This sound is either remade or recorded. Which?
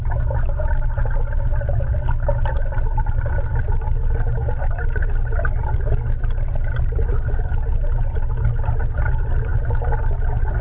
recorded